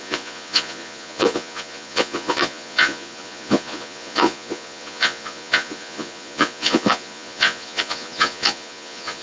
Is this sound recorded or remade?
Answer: remade